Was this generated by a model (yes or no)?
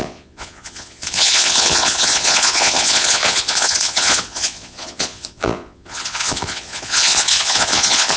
yes